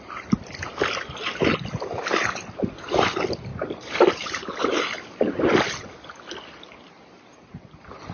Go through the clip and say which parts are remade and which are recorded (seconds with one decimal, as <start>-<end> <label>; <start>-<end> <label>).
0.0-8.1 recorded